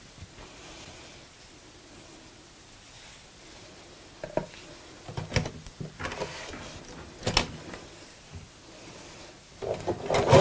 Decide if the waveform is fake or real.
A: real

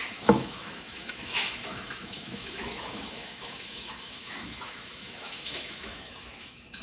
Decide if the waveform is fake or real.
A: fake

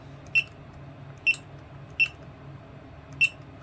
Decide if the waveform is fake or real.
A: real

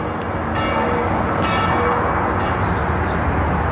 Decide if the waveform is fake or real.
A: real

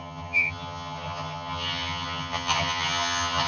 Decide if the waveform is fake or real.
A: fake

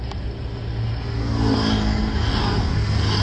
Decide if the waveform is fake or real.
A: real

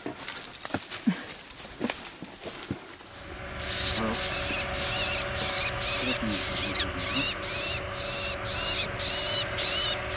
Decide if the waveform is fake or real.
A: real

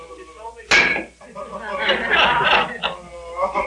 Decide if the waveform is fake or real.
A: real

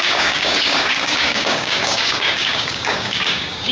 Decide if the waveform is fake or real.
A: fake